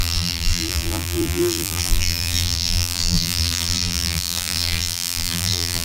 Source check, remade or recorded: remade